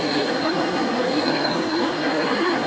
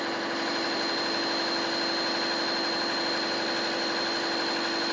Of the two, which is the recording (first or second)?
second